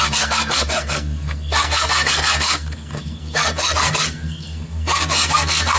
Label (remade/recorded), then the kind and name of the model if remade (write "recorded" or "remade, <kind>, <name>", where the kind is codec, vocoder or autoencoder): remade, codec, SNAC